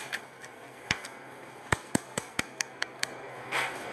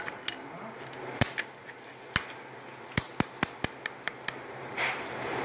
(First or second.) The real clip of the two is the second